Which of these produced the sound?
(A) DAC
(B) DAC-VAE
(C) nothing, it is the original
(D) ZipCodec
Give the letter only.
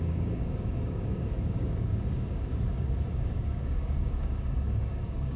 A